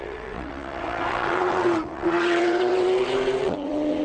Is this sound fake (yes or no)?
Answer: yes